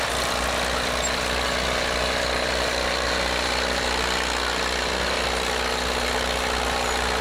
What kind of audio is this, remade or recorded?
recorded